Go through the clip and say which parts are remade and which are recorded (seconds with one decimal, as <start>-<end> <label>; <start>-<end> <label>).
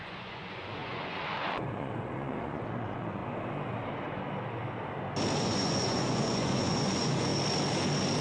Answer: 0.0-3.2 remade; 3.2-5.4 recorded; 5.4-7.3 remade; 7.3-8.2 recorded